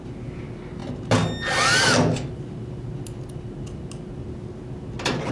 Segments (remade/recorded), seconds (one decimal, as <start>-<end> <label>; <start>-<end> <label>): 0.0-4.2 recorded; 4.2-5.3 remade